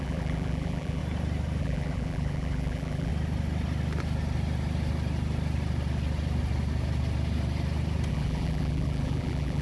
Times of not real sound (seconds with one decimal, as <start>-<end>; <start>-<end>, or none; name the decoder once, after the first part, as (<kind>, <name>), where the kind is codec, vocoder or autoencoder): 0.0-1.0 (vocoder, BigVGAN v2); 1.6-3.1; 8.1-9.6